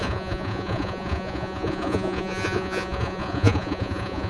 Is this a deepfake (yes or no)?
yes